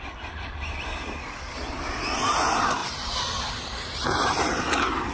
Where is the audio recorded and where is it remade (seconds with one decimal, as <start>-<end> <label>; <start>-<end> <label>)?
0.0-5.1 recorded